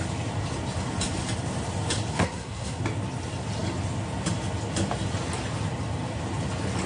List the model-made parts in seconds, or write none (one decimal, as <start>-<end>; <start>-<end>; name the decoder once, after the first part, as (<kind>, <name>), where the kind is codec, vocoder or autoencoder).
2.1-2.8 (codec, SNAC)